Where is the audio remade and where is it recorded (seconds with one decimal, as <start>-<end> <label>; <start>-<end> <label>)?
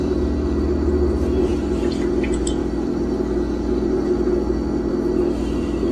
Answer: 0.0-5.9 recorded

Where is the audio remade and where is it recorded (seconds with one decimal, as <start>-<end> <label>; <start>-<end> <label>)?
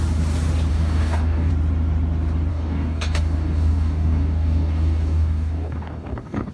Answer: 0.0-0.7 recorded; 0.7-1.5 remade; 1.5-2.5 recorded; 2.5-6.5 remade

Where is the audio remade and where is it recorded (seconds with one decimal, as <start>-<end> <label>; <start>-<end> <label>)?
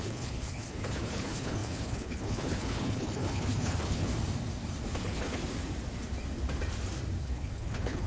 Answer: 0.0-4.1 remade; 4.1-5.0 recorded; 5.0-5.4 remade; 5.4-7.2 recorded; 7.2-8.1 remade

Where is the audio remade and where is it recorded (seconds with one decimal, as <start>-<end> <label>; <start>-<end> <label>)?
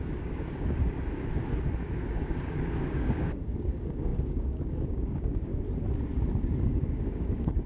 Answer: 0.0-1.3 remade; 1.3-1.8 recorded; 1.8-5.5 remade; 5.5-6.6 recorded; 6.6-7.7 remade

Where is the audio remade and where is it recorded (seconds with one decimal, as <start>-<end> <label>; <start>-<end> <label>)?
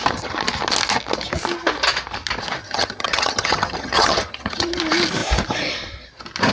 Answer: 0.0-2.6 recorded; 2.6-4.8 remade; 4.8-6.5 recorded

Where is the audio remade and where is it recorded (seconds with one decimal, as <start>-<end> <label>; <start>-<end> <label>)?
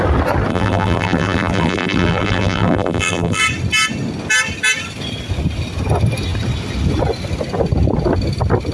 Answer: 0.0-0.5 recorded; 0.5-3.4 remade; 3.4-8.7 recorded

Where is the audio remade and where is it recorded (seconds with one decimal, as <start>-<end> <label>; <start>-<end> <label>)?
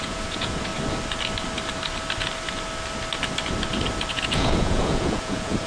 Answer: 0.0-0.7 remade; 0.7-4.1 recorded; 4.1-5.7 remade